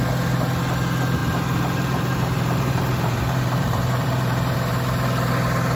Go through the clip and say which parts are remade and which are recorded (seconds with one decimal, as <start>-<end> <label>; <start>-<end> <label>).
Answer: 0.0-1.2 recorded; 1.2-4.7 remade; 4.7-5.8 recorded